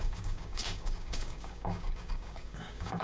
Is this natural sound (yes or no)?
no